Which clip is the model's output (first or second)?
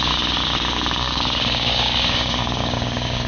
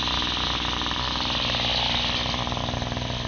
first